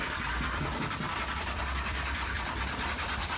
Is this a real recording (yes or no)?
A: no